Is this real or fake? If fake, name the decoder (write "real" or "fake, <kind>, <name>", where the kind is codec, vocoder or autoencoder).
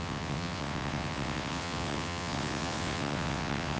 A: fake, vocoder, WaveNeXt